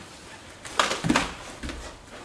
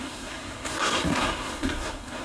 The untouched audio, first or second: first